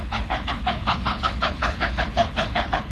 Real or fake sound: fake